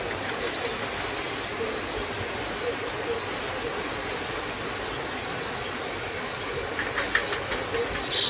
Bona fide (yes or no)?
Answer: yes